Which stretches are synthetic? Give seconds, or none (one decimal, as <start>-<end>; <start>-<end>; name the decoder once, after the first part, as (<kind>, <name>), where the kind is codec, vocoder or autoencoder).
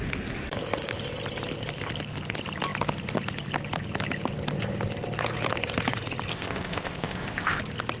6.3-7.6 (codec, ZipCodec)